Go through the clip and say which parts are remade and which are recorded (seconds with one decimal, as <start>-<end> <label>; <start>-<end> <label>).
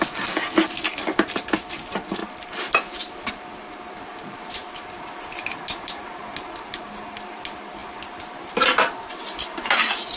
0.0-10.2 recorded